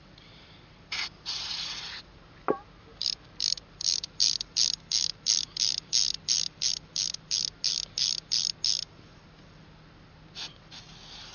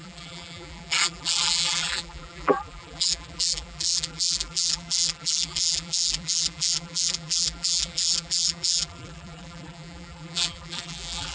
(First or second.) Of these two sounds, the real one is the first